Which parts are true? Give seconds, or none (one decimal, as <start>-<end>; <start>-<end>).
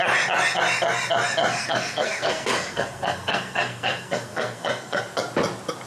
0.0-1.5; 5.0-5.9